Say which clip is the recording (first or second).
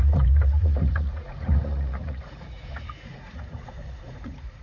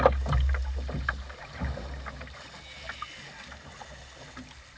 second